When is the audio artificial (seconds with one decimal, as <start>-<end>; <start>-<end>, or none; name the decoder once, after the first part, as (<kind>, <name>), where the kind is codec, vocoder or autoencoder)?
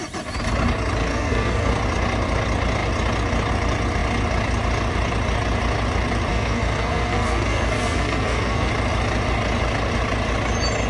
1.1-1.7 (codec, SNAC); 6.3-8.7